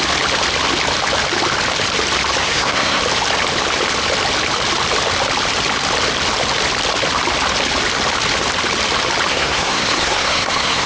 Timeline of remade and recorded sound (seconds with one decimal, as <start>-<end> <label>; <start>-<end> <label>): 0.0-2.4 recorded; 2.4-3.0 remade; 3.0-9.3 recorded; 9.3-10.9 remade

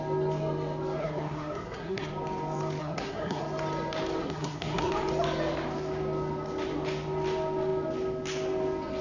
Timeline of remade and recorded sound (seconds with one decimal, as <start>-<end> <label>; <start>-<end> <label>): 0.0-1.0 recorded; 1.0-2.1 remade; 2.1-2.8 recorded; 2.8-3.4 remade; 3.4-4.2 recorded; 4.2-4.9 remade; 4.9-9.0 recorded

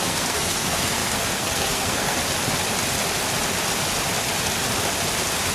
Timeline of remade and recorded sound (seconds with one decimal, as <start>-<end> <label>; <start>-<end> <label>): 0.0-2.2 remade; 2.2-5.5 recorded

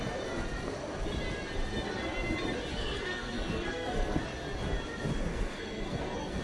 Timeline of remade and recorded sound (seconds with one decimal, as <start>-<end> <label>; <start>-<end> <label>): 0.0-2.7 recorded; 2.7-4.2 remade; 4.2-5.3 recorded; 5.3-6.4 remade

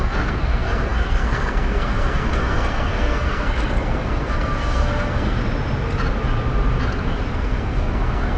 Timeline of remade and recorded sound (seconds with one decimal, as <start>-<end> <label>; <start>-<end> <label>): 0.0-5.4 remade; 5.4-7.3 recorded; 7.3-8.4 remade

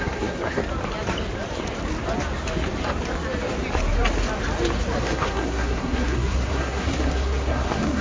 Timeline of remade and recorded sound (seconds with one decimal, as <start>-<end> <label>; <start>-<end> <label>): 0.0-0.6 remade; 0.6-5.0 recorded; 5.0-8.0 remade

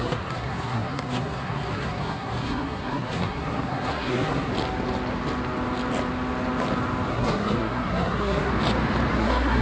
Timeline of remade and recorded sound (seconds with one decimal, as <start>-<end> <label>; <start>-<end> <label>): 0.0-4.5 remade; 4.5-7.1 recorded; 7.1-8.5 remade; 8.5-9.1 recorded; 9.1-9.6 remade